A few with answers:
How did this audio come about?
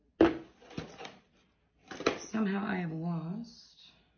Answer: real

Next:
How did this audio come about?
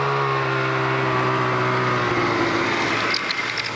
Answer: real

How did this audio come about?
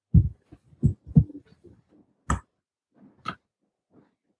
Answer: real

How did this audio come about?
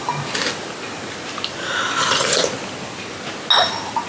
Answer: real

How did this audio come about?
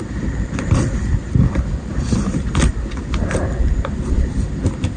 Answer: fake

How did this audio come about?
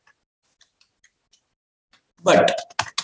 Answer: real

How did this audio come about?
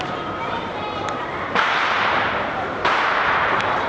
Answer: fake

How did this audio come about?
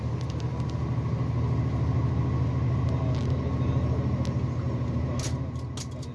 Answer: real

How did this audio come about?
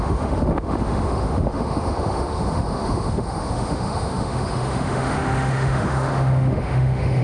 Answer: fake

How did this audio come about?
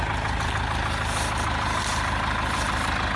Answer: real